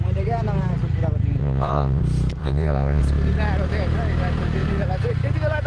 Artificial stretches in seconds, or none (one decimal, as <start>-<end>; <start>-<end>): 1.4-2.0; 2.4-3.0